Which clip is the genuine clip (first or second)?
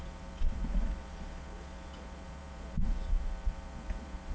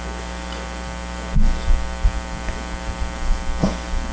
second